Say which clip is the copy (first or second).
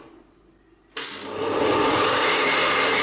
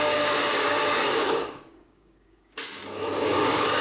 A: second